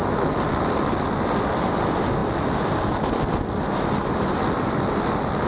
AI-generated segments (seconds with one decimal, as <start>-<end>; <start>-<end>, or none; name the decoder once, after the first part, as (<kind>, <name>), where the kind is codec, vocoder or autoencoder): none